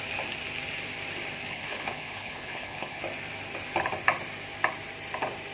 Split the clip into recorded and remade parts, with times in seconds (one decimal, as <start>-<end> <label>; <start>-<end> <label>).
0.0-1.5 recorded; 1.5-3.0 remade; 3.0-5.5 recorded